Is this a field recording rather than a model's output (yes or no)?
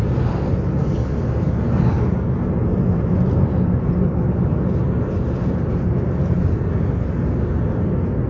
yes